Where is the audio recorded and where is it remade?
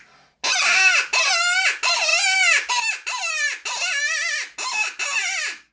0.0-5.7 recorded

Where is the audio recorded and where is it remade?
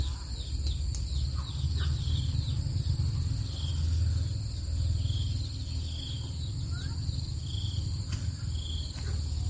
0.0-9.5 recorded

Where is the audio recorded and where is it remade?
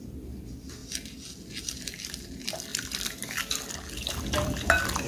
0.0-0.8 remade; 0.8-1.6 recorded; 1.6-5.1 remade